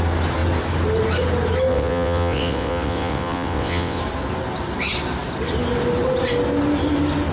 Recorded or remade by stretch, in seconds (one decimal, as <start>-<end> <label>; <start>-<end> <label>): 0.0-1.7 recorded; 1.7-4.0 remade; 4.0-7.3 recorded